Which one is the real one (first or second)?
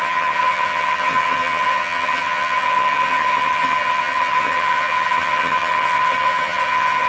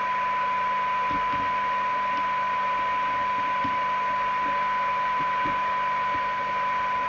second